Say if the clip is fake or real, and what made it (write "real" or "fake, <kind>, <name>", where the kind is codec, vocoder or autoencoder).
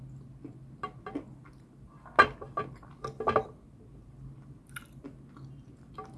real